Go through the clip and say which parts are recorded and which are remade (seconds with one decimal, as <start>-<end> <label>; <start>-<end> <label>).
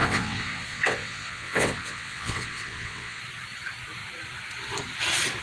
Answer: 0.0-3.2 remade; 3.2-5.4 recorded